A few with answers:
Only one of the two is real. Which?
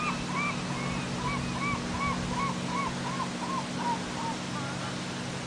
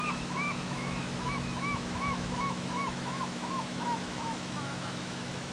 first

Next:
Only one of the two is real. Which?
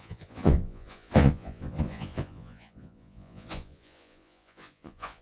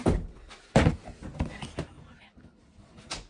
second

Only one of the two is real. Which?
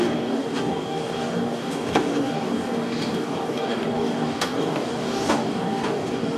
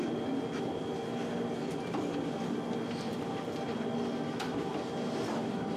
second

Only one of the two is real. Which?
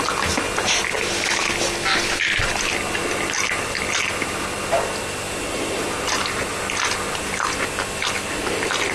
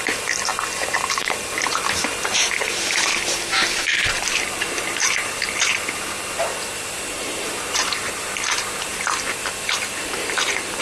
first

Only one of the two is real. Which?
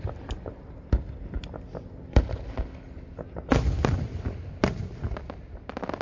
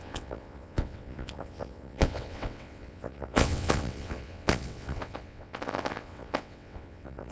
first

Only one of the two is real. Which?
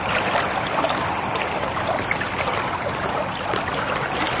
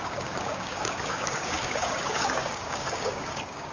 first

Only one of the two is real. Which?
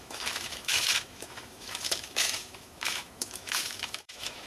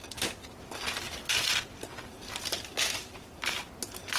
second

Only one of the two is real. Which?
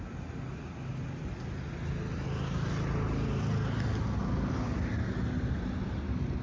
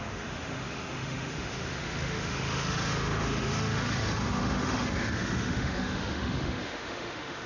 first